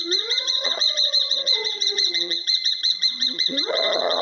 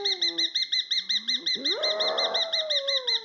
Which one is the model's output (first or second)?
first